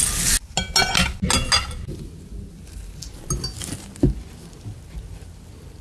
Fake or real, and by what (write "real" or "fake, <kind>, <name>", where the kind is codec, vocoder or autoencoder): real